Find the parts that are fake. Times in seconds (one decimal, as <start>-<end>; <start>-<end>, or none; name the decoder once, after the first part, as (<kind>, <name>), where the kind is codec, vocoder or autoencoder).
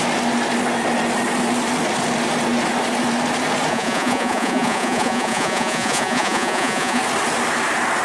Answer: 3.7-7.0 (vocoder, Vocos)